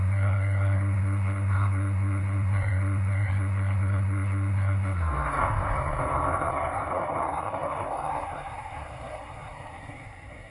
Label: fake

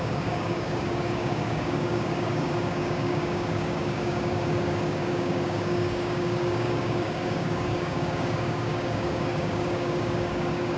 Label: fake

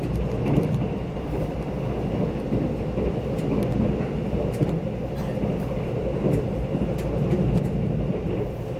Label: real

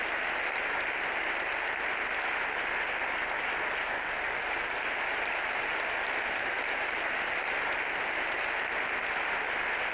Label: real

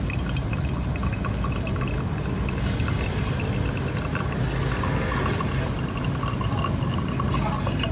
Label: real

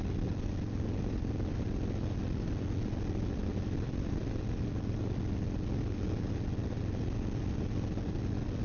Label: real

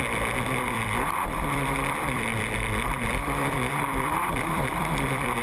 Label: fake